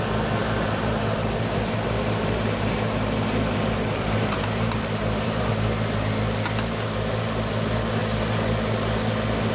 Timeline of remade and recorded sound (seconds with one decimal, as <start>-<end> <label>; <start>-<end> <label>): 0.0-0.4 recorded; 0.4-5.5 remade; 5.5-9.5 recorded